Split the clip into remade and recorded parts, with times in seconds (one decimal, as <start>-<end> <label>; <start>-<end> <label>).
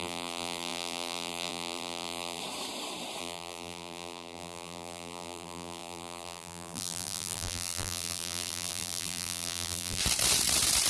0.0-2.4 remade; 2.4-3.2 recorded; 3.2-10.0 remade; 10.0-10.9 recorded